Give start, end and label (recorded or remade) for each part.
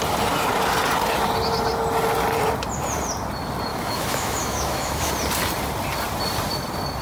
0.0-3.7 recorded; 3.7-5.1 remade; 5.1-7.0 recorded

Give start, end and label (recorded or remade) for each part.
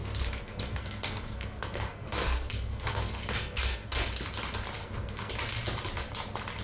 0.0-4.0 remade; 4.0-4.8 recorded; 4.8-5.3 remade; 5.3-6.6 recorded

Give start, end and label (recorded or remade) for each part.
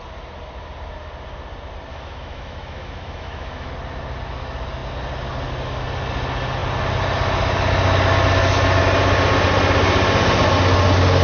0.0-1.9 recorded; 1.9-3.7 remade; 3.7-11.2 recorded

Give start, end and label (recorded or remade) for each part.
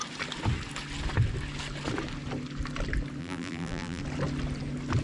0.0-3.2 recorded; 3.2-4.0 remade; 4.0-5.0 recorded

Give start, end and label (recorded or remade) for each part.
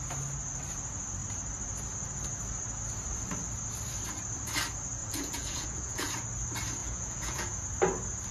0.0-5.0 recorded; 5.0-6.1 remade; 6.1-6.8 recorded; 6.8-7.6 remade; 7.6-8.3 recorded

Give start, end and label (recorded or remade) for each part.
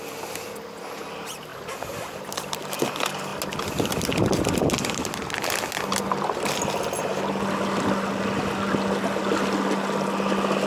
0.0-10.7 recorded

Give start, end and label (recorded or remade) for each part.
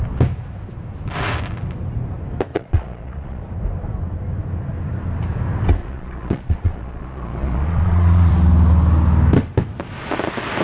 0.0-2.5 recorded; 2.5-3.4 remade; 3.4-5.8 recorded; 5.8-8.3 remade; 8.3-10.6 recorded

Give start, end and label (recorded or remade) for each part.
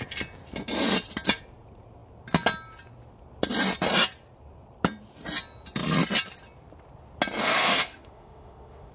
0.0-7.4 recorded; 7.4-8.9 remade